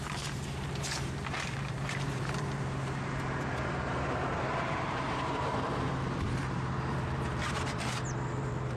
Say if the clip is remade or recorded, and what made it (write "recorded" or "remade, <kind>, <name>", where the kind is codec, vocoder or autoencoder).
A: remade, vocoder, BigVGAN v2